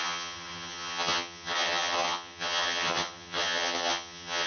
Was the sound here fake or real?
fake